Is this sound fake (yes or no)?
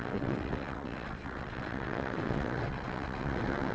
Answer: yes